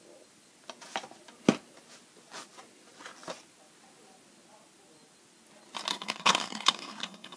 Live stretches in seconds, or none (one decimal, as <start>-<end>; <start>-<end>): 0.0-5.9